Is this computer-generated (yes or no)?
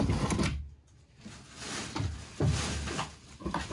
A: no